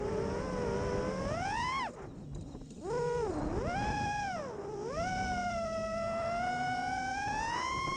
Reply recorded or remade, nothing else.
recorded